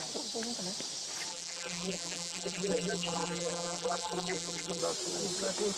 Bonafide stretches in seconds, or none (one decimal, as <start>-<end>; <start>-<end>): 0.0-1.3; 4.8-5.8